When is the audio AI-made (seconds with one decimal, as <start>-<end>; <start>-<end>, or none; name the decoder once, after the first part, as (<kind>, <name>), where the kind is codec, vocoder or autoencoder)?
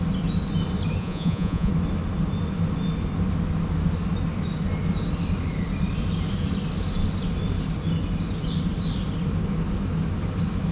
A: 1.0-1.7 (vocoder, Vocos)